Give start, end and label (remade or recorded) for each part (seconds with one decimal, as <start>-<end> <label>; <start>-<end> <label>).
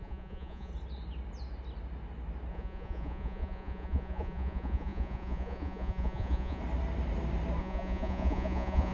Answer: 0.0-0.7 remade; 0.7-2.5 recorded; 2.5-6.6 remade; 6.6-7.6 recorded; 7.6-8.9 remade